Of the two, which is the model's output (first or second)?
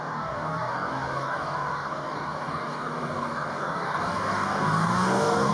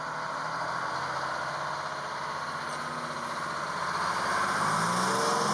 first